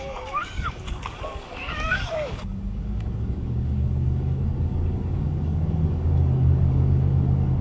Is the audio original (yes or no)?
no